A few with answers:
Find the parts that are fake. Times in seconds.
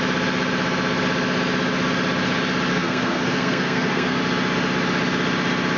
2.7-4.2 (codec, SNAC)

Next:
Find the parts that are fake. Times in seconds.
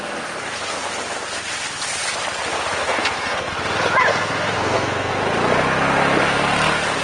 2.8-3.5 (codec, SNAC); 4.1-5.1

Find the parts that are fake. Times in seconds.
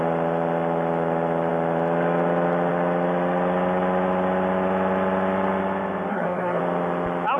6.1-6.6 (codec, SNAC)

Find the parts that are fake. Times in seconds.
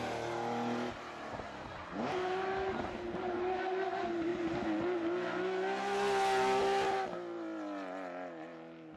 none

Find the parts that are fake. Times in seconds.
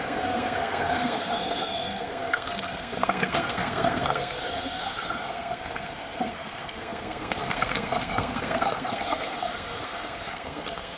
0.0-11.0 (codec, SNAC)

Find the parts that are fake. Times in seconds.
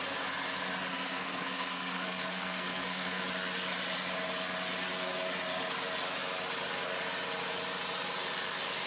0.9-3.2 (codec, SNAC)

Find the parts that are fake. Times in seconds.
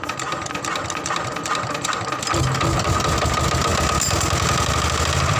none